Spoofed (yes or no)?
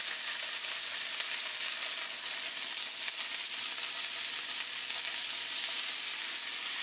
no